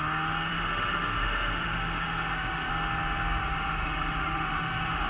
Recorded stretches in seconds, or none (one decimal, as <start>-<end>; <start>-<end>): 0.0-0.5; 2.7-3.4